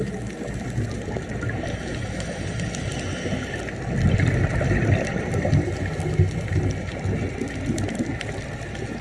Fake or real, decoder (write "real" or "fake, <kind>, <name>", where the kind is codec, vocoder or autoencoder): real